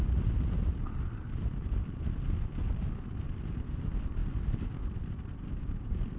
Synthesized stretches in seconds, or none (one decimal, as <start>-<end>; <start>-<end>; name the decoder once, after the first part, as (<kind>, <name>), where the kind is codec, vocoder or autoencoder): none